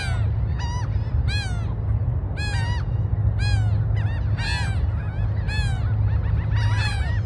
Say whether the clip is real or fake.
real